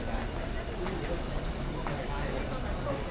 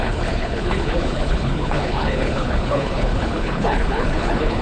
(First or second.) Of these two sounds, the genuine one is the first